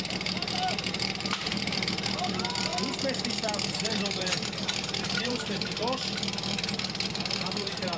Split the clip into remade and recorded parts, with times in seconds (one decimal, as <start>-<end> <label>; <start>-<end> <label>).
0.0-2.7 remade; 2.7-3.3 recorded; 3.3-5.8 remade; 5.8-7.1 recorded; 7.1-8.0 remade

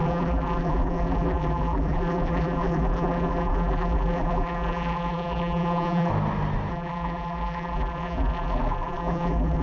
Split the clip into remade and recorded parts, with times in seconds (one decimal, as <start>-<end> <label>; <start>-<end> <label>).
0.0-6.1 remade; 6.1-6.7 recorded; 6.7-9.6 remade

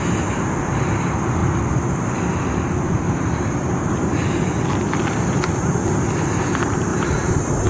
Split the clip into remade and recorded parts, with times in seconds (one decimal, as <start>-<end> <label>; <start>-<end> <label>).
0.0-1.4 recorded; 1.4-6.0 remade; 6.0-6.9 recorded; 6.9-7.7 remade

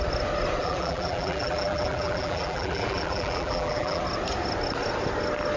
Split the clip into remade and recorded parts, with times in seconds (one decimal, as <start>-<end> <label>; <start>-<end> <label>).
0.0-0.6 recorded; 0.6-4.0 remade; 4.0-5.6 recorded